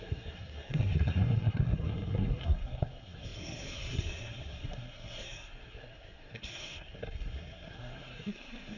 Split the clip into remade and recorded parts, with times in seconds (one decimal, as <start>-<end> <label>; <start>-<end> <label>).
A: 0.0-8.8 remade